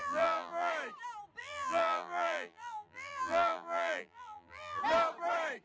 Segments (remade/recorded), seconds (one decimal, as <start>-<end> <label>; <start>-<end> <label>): 0.0-0.7 remade; 0.7-1.4 recorded; 1.4-4.8 remade; 4.8-5.6 recorded